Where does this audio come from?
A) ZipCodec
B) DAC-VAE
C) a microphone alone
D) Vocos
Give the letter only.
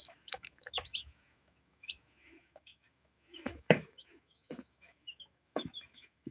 B